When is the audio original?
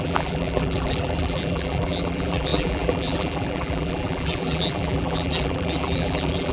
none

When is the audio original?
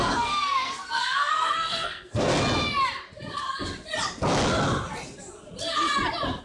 2.3-6.4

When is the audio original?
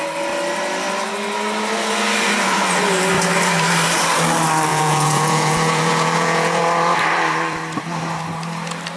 0.0-4.7; 6.6-9.0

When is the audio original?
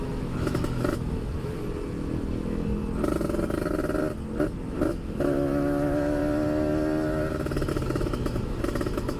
1.6-4.9; 6.2-7.7